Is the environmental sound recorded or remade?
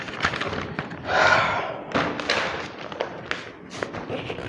recorded